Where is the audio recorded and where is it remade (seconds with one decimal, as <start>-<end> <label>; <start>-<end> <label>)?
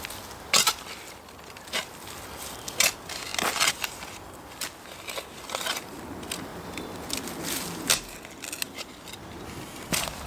0.0-10.3 recorded